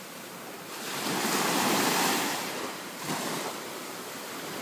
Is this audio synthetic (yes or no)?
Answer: yes